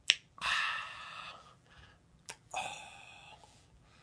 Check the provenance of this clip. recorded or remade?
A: remade